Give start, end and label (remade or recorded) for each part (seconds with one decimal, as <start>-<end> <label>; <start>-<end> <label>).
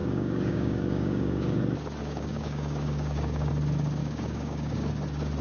0.0-1.6 remade; 1.6-2.0 recorded; 2.0-3.5 remade; 3.5-4.0 recorded; 4.0-4.9 remade; 4.9-5.4 recorded